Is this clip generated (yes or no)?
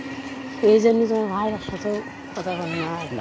no